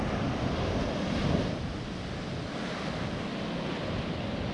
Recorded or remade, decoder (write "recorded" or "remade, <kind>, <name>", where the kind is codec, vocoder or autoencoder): recorded